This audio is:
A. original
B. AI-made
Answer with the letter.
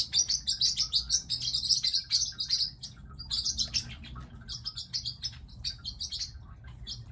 A